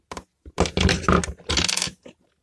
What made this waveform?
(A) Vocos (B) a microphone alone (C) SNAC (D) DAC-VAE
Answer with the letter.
B